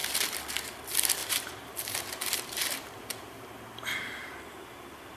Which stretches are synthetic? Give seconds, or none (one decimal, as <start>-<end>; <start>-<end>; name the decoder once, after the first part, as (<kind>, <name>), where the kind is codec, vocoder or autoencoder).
1.2-4.3 (vocoder, BigVGAN v2)